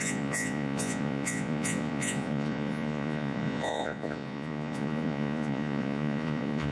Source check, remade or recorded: remade